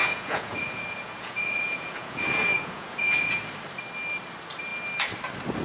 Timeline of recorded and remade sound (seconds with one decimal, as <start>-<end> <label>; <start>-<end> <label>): 0.0-3.4 remade; 3.4-5.6 recorded